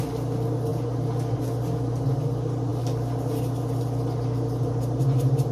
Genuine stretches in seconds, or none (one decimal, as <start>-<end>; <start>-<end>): 0.0-5.5